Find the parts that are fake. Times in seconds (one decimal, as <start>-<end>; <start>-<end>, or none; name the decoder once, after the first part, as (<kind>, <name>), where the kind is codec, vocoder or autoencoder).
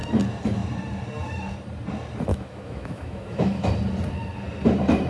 2.3-3.7 (autoencoder, DAC-VAE)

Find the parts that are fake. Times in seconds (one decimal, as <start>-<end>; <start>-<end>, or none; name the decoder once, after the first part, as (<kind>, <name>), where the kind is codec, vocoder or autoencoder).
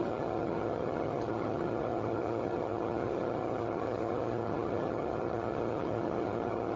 0.0-6.8 (vocoder, HiFi-GAN)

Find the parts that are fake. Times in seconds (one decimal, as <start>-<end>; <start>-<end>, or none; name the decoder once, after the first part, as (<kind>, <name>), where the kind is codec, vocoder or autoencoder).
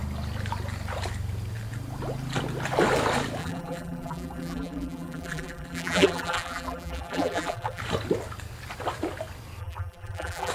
3.4-7.8 (vocoder, BigVGAN v2); 9.6-10.5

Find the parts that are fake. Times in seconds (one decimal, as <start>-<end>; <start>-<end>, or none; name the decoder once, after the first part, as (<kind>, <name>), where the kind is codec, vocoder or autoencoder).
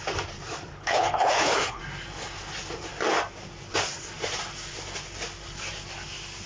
0.7-1.8 (codec, HILCodec)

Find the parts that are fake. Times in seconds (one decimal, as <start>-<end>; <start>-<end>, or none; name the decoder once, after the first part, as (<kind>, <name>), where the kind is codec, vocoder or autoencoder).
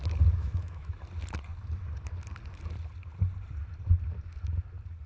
0.4-0.9 (autoencoder, DAC-VAE)